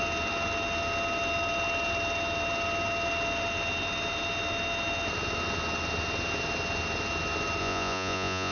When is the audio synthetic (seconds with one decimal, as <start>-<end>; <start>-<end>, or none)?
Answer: 7.6-8.5